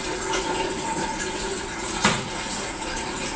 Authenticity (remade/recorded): remade